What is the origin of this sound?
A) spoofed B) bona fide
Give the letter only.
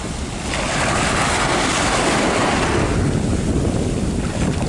B